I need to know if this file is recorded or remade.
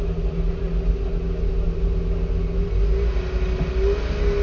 recorded